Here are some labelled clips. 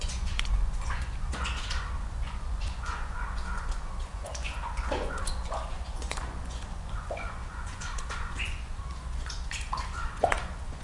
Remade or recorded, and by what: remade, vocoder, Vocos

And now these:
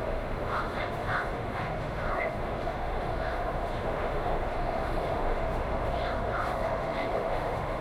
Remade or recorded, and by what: remade, autoencoder, DAC-VAE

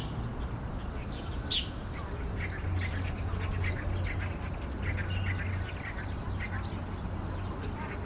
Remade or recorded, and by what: recorded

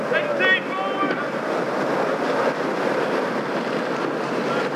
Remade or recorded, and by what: recorded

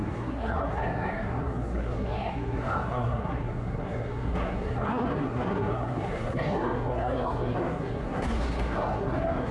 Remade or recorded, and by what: remade, codec, SNAC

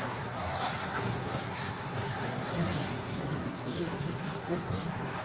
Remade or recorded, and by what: remade, codec, SNAC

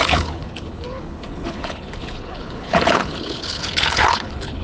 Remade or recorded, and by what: remade, codec, HILCodec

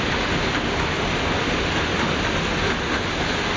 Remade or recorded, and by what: recorded